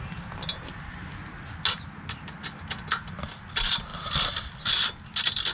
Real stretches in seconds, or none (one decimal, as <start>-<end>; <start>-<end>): 0.0-5.5